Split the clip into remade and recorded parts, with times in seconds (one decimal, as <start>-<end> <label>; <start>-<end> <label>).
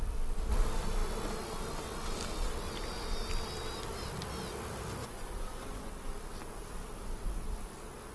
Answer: 0.0-5.0 recorded; 5.0-5.9 remade; 5.9-8.1 recorded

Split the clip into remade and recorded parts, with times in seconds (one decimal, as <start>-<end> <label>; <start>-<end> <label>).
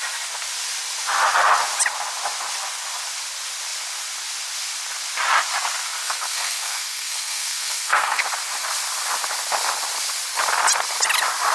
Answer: 0.0-6.0 recorded; 6.0-8.2 remade; 8.2-11.5 recorded